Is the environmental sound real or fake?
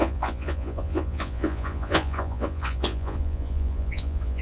fake